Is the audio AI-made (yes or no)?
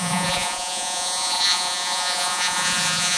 yes